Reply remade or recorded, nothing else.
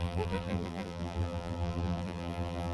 remade